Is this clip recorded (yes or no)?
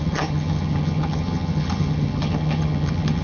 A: no